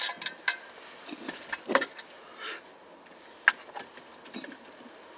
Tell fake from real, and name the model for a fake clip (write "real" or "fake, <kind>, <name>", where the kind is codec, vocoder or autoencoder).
real